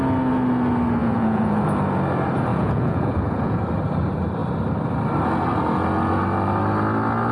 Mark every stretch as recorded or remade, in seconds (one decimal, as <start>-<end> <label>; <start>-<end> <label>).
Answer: 0.0-1.0 recorded; 1.0-1.6 remade; 1.6-2.5 recorded; 2.5-3.6 remade; 3.6-7.3 recorded